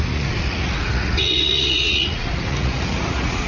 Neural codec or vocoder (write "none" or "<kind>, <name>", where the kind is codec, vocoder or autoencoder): vocoder, Vocos